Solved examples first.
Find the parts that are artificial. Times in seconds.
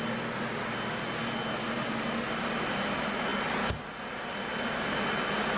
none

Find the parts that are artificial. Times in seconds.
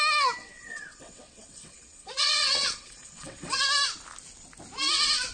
0.4-3.6 (vocoder, WaveNeXt)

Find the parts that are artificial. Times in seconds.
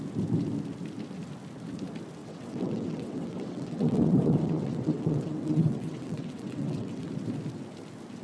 2.2-7.1 (vocoder, WaveNeXt)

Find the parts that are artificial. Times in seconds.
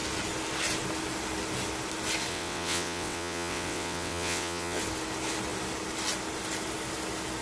2.3-4.8 (vocoder, WaveNeXt)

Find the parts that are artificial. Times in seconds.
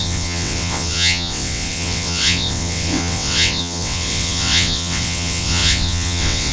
0.0-6.5 (vocoder, WaveNeXt)